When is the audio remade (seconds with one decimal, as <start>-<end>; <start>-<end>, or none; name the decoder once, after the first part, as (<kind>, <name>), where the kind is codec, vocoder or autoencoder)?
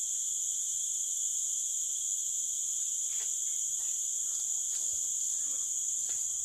0.0-1.3 (vocoder, BigVGAN v2); 5.1-6.4